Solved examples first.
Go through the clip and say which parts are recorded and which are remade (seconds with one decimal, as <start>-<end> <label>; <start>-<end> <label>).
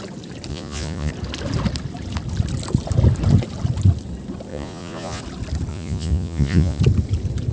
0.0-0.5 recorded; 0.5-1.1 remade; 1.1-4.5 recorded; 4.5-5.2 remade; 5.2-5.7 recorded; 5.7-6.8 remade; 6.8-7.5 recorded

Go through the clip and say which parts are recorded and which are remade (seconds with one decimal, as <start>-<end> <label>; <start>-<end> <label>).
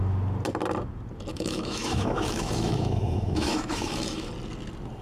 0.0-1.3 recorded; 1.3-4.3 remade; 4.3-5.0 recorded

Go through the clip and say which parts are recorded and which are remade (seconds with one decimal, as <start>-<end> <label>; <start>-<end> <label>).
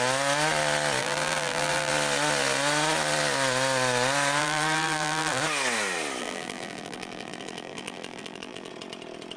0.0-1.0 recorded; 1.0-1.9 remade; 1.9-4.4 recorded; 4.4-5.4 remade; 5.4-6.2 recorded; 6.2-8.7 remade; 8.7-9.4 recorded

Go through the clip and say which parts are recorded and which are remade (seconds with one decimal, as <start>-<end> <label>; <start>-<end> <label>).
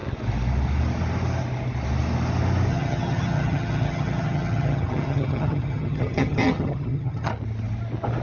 0.0-2.7 recorded; 2.7-7.3 remade; 7.3-8.2 recorded